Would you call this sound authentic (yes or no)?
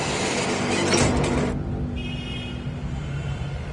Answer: yes